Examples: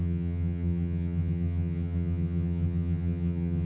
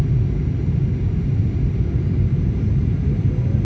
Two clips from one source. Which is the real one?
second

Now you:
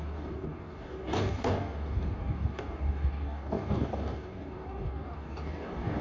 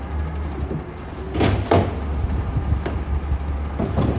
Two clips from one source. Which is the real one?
second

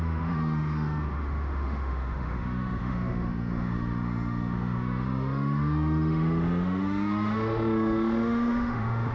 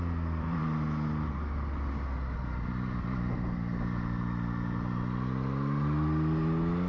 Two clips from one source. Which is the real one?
second